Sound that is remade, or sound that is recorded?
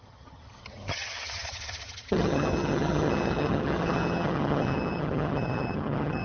remade